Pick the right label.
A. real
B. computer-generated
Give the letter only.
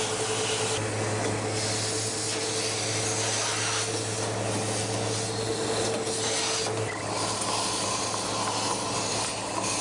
A